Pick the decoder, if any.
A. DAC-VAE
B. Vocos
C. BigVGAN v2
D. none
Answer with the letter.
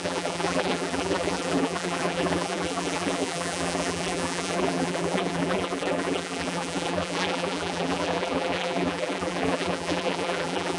C